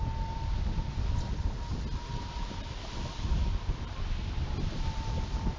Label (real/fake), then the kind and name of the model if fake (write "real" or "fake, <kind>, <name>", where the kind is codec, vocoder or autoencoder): real